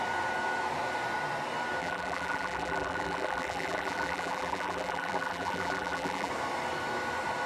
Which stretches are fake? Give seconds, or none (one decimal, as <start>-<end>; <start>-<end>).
1.8-6.3